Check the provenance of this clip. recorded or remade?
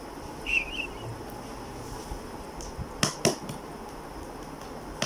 recorded